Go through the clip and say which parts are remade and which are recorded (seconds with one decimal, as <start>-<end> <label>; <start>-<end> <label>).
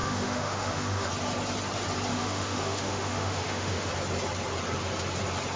0.0-1.1 remade; 1.1-2.1 recorded; 2.1-3.9 remade; 3.9-5.6 recorded